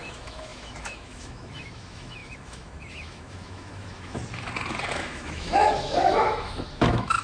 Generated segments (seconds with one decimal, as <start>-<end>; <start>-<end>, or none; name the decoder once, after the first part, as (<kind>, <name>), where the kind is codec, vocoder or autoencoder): 0.0-4.2 (autoencoder, DAC-VAE); 4.9-7.2